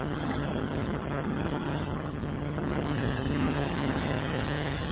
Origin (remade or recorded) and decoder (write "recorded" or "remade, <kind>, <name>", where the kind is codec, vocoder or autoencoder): remade, vocoder, HiFi-GAN